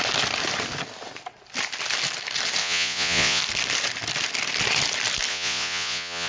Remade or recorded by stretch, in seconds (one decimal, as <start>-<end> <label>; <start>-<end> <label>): 0.0-2.6 recorded; 2.6-3.4 remade; 3.4-5.3 recorded; 5.3-6.3 remade